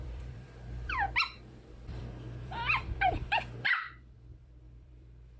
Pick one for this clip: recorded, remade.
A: remade